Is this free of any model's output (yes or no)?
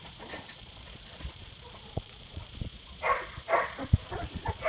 no